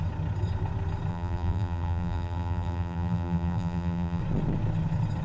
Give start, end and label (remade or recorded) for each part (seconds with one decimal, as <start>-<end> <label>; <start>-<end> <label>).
0.0-1.1 recorded; 1.1-4.2 remade; 4.2-5.2 recorded